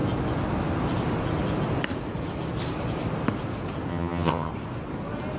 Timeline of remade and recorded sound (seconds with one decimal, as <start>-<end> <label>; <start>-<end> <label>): 0.0-3.9 recorded; 3.9-4.5 remade; 4.5-5.4 recorded